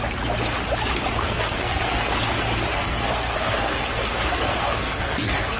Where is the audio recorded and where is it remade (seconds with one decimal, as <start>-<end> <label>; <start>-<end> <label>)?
0.0-1.2 recorded; 1.2-2.1 remade; 2.1-2.7 recorded; 2.7-5.6 remade